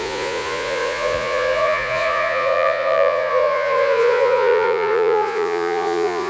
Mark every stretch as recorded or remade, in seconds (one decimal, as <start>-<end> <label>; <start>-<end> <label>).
0.0-6.3 remade